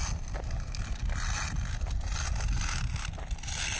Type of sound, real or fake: real